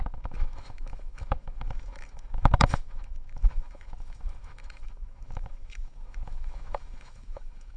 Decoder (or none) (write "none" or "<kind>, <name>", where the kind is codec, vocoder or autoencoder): autoencoder, DAC-VAE